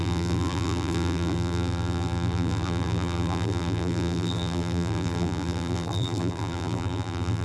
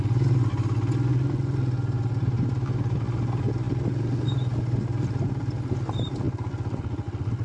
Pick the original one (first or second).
second